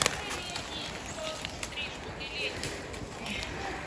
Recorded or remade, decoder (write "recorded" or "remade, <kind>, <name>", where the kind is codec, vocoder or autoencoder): recorded